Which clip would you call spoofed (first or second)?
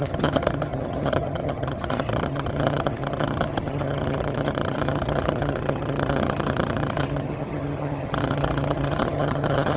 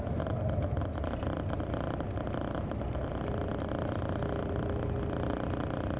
first